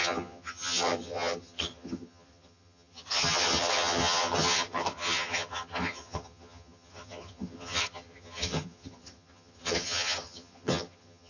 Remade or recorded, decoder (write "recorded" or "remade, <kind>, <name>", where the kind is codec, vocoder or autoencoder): remade, vocoder, HiFi-GAN